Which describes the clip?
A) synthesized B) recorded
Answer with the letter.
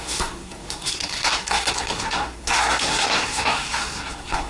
A